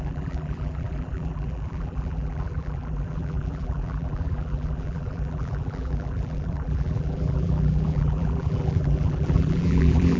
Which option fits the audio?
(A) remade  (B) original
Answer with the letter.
A